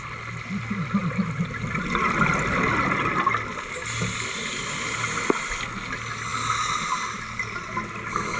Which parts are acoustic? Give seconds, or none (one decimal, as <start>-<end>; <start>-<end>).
0.0-8.4